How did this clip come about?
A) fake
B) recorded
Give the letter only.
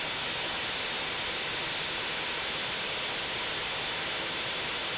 B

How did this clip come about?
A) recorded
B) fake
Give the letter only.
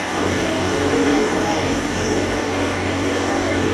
B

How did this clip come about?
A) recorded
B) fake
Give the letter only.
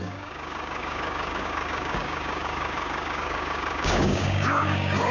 B